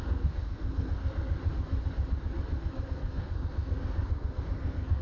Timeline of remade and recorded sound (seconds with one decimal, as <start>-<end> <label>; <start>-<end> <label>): 0.0-1.4 remade; 1.4-2.9 recorded; 2.9-5.0 remade